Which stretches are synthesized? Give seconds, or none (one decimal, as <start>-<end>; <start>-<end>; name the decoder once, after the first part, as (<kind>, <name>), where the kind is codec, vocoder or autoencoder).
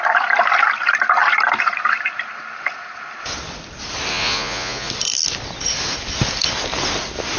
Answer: 4.1-4.9 (vocoder, Vocos)